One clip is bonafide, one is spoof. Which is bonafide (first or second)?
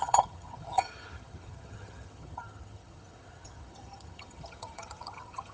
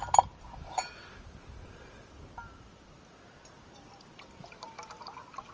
second